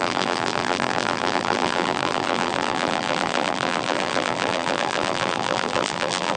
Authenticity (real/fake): fake